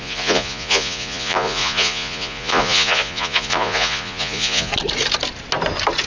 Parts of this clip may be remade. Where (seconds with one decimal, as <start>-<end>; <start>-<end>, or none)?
0.0-4.7